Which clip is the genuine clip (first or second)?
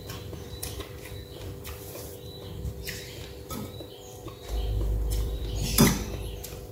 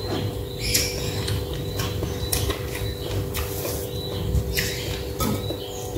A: second